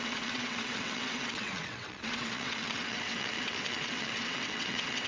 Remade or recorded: remade